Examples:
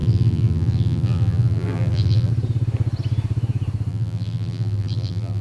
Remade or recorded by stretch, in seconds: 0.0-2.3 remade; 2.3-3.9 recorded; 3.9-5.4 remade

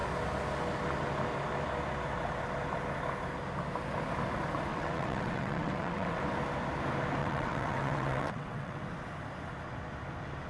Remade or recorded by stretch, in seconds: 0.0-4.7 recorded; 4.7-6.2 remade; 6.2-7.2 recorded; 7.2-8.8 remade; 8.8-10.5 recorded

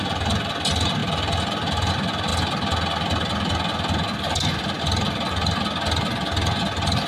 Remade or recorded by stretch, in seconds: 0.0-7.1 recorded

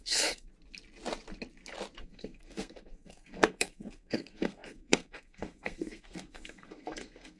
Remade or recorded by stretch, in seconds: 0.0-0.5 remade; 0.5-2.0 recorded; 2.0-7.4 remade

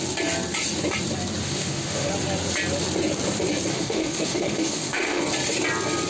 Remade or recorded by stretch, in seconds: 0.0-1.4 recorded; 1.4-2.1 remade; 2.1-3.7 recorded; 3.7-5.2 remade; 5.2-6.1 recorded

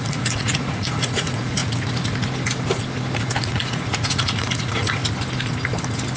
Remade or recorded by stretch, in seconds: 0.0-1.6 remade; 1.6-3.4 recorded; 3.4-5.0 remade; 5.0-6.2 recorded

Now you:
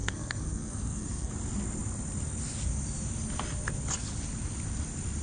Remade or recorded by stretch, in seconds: 0.0-1.3 remade; 1.3-5.2 recorded

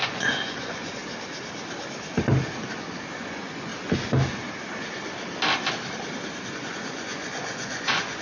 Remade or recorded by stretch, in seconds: 0.0-1.0 remade; 1.0-3.1 recorded; 3.1-3.7 remade; 3.7-6.5 recorded; 6.5-8.2 remade